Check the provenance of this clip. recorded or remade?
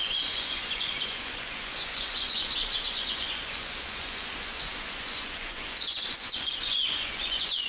remade